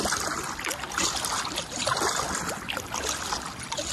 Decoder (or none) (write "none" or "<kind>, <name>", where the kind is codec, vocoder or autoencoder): none